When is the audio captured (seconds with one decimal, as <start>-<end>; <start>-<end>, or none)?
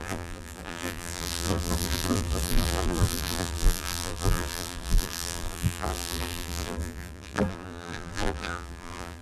none